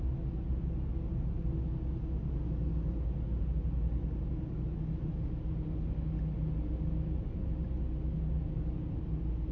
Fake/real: real